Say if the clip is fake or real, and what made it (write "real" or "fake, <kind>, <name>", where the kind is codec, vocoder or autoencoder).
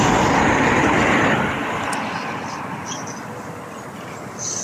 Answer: real